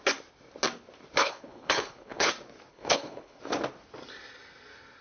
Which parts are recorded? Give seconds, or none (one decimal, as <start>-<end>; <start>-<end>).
0.0-1.2; 2.3-2.7; 3.4-5.0